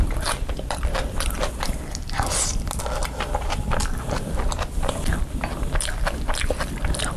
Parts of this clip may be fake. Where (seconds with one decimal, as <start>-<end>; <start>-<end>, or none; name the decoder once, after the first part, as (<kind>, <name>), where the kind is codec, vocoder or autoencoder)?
0.0-3.0 (vocoder, BigVGAN v2); 3.8-7.2